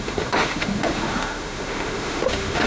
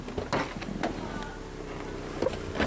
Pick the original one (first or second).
second